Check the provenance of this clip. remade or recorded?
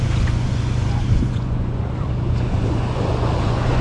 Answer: remade